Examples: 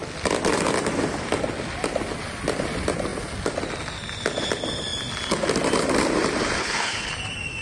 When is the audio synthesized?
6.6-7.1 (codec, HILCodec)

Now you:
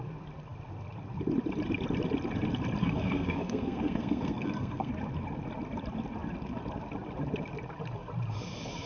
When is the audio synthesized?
2.8-4.9 (codec, SNAC)

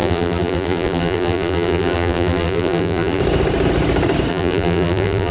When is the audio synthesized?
0.0-3.2 (vocoder, BigVGAN v2); 4.3-5.3

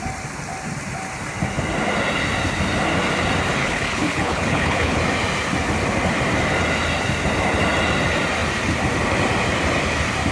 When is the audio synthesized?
3.6-5.0 (codec, HILCodec)

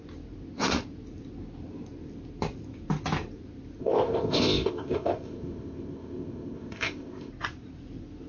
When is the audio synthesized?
3.8-7.3 (codec, ZipCodec)

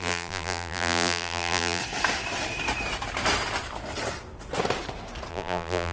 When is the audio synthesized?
0.0-1.8 (vocoder, BigVGAN v2); 5.3-5.9